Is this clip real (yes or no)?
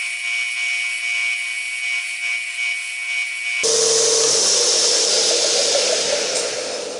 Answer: yes